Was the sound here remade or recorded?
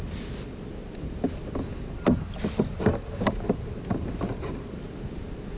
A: recorded